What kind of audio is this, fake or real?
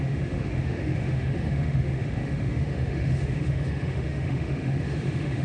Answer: fake